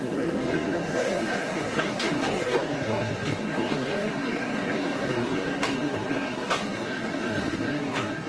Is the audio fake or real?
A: fake